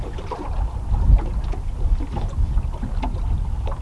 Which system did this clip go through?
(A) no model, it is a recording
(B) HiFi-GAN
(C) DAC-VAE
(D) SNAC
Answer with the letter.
A